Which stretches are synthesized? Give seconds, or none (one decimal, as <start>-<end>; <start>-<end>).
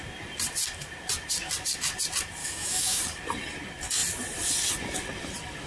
2.4-3.0